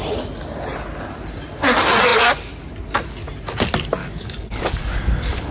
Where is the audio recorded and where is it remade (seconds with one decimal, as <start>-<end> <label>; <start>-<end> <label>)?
0.0-4.0 recorded; 4.0-5.5 remade

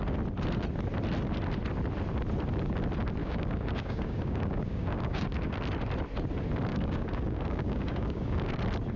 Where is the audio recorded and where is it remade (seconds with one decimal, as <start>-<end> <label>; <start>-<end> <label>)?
0.0-3.2 recorded; 3.2-5.6 remade; 5.6-6.7 recorded; 6.7-8.6 remade; 8.6-9.0 recorded

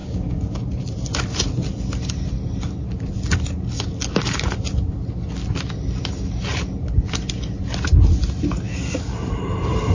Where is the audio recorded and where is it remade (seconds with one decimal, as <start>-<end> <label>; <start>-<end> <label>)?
0.0-0.6 remade; 0.6-9.9 recorded

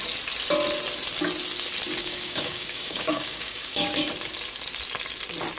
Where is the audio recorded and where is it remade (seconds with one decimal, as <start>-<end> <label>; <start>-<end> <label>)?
0.0-2.0 recorded; 2.0-4.0 remade; 4.0-5.6 recorded